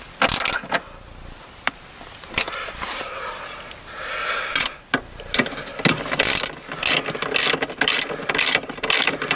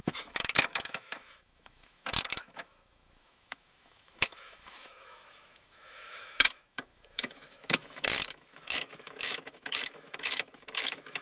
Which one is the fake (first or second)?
second